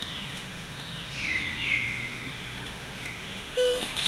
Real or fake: fake